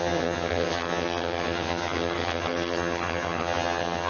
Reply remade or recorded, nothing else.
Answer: remade